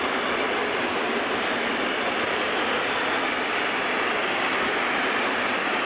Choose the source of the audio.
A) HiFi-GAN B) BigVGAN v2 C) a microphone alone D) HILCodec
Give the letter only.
C